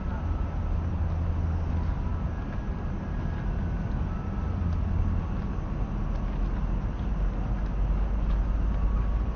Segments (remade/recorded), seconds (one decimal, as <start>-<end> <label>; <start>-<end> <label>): 0.0-9.4 recorded